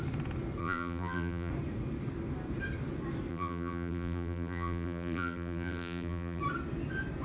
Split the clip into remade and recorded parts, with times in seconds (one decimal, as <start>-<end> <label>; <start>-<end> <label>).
0.0-0.6 recorded; 0.6-1.5 remade; 1.5-3.3 recorded; 3.3-6.4 remade; 6.4-7.2 recorded

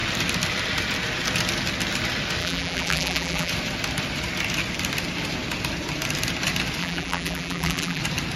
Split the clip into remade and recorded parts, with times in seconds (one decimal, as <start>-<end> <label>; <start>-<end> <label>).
0.0-2.4 recorded; 2.4-3.5 remade; 3.5-6.8 recorded; 6.8-8.0 remade; 8.0-8.4 recorded

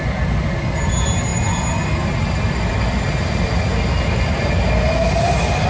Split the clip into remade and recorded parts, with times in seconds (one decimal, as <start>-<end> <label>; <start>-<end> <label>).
0.0-5.7 recorded

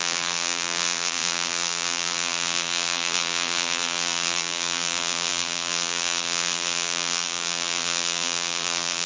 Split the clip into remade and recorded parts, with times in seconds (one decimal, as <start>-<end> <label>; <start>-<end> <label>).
0.0-9.1 remade

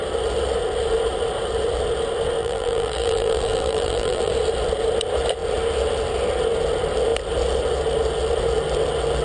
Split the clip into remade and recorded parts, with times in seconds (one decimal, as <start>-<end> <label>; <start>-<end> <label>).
0.0-2.4 recorded; 2.4-4.3 remade; 4.3-9.2 recorded

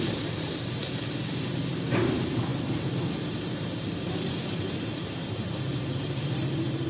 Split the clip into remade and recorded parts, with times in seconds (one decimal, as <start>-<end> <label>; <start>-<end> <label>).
0.0-6.9 remade

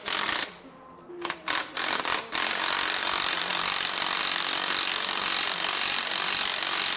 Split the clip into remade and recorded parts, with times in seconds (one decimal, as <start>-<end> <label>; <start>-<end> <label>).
0.0-7.0 remade